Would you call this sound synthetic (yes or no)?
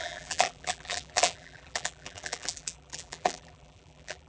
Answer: yes